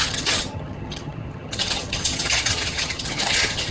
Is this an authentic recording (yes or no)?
no